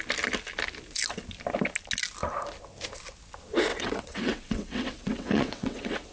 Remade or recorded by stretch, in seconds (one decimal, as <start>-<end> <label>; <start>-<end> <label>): 0.0-3.7 recorded; 3.7-6.1 remade